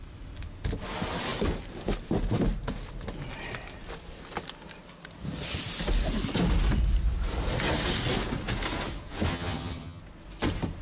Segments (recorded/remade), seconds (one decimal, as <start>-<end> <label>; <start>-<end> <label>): 0.0-9.3 recorded; 9.3-10.0 remade; 10.0-10.8 recorded